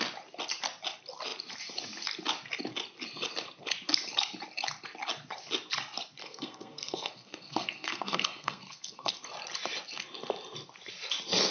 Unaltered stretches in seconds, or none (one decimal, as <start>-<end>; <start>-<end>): 0.0-6.2; 9.1-11.5